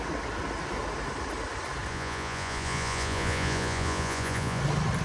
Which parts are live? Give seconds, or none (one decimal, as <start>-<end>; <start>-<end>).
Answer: 0.0-1.9; 4.6-5.0

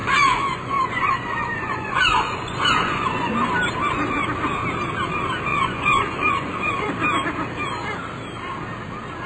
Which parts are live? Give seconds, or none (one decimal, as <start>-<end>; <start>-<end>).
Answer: 3.3-5.5; 6.9-9.3

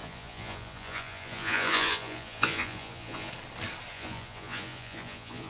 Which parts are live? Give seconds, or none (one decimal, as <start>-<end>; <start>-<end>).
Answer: 3.3-3.9

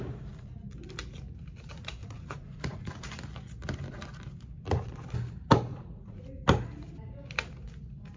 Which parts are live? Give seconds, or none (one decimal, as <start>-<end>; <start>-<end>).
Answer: 0.0-2.0; 2.9-5.7; 6.2-8.2

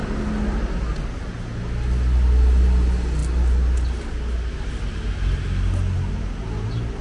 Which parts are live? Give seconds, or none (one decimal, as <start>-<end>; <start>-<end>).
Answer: 0.0-7.0